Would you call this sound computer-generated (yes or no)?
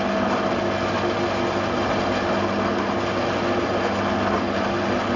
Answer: no